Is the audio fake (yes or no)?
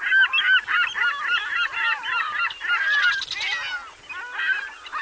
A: no